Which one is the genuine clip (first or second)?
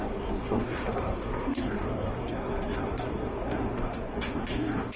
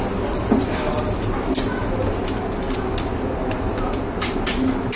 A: second